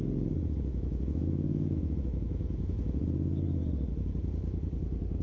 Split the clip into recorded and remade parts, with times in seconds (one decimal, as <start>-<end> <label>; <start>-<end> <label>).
0.0-0.7 recorded; 0.7-2.8 remade; 2.8-5.2 recorded